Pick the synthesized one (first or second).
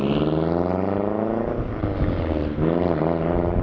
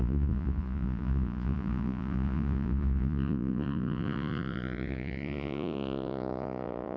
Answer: second